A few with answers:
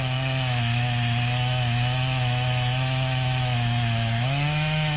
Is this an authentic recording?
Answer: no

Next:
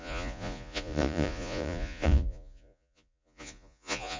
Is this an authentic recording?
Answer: no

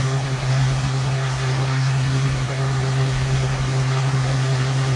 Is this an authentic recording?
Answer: no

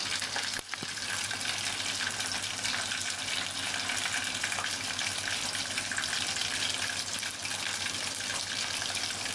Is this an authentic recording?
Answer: yes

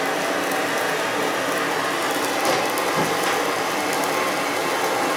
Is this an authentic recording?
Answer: yes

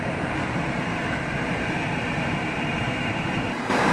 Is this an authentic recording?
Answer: no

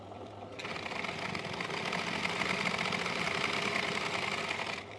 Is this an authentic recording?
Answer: yes